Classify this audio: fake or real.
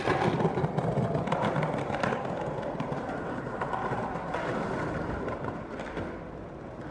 real